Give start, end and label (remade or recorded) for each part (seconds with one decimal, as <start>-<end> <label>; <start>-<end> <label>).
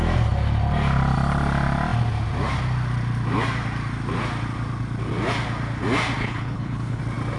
0.0-6.2 recorded; 6.2-7.0 remade; 7.0-7.4 recorded